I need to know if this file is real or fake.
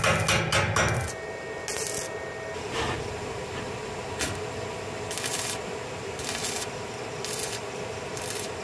real